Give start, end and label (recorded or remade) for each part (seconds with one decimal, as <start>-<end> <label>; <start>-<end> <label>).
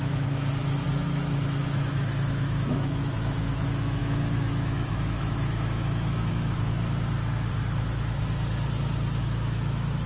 0.0-6.7 remade; 6.7-9.2 recorded; 9.2-10.1 remade